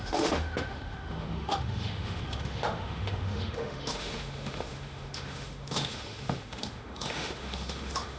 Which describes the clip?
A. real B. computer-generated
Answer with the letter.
B